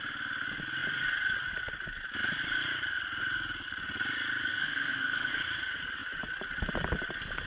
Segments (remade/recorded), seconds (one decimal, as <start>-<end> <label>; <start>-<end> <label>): 0.0-4.5 recorded; 4.5-5.3 remade; 5.3-7.5 recorded